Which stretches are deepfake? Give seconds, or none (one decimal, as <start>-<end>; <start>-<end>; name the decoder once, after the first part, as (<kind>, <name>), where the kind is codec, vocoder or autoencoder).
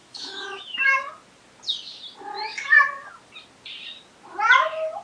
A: 0.0-1.1 (autoencoder, DAC-VAE)